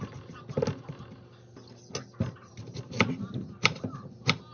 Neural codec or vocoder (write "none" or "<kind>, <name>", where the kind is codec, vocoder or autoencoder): none